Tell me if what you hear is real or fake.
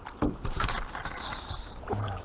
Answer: real